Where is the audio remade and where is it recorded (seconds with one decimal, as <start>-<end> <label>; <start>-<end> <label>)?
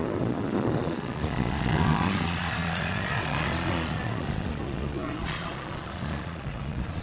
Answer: 0.0-7.0 remade